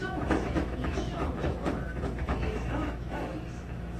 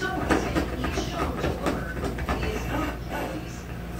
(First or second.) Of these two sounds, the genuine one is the second